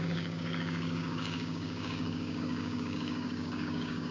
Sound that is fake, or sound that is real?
fake